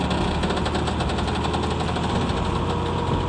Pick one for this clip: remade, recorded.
recorded